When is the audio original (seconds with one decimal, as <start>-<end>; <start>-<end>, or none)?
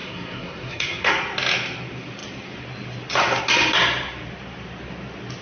1.1-5.4